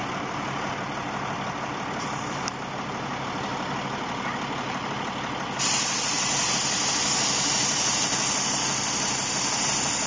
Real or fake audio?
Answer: real